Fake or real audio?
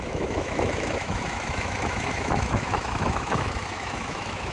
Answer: fake